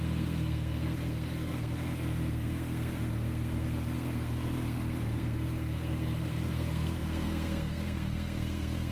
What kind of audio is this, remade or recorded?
remade